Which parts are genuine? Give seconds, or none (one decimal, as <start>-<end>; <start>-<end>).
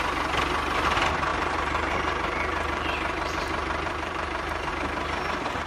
0.0-1.3; 4.7-5.7